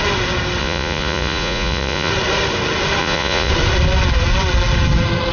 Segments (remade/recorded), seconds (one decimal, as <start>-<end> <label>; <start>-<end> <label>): 0.0-0.6 recorded; 0.6-2.1 remade; 2.1-3.0 recorded; 3.0-3.5 remade; 3.5-5.3 recorded